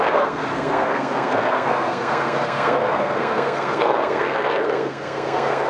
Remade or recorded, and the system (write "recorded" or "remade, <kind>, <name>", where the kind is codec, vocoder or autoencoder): remade, codec, SNAC